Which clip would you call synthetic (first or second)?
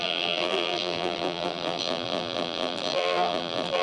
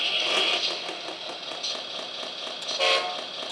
first